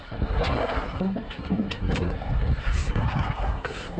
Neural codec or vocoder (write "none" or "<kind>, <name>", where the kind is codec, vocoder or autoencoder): codec, SNAC